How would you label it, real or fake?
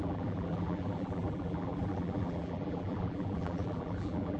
fake